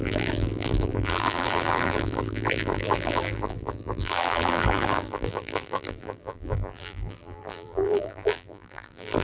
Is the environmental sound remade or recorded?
remade